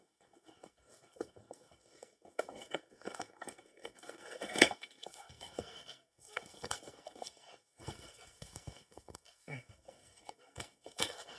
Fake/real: fake